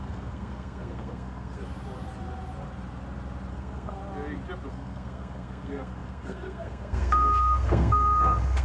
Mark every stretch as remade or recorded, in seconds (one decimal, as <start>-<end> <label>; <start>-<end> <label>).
0.0-1.6 remade; 1.6-3.5 recorded; 3.5-4.0 remade; 4.0-4.7 recorded; 4.7-8.6 remade